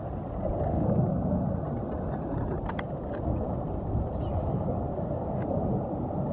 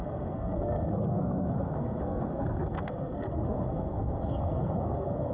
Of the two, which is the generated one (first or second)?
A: second